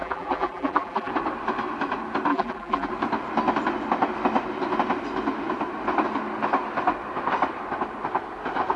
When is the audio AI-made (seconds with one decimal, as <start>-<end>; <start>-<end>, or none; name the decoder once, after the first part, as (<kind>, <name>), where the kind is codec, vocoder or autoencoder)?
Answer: 0.0-1.1 (vocoder, BigVGAN v2); 2.3-2.9